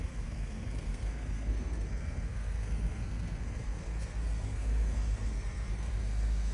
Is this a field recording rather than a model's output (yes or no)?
no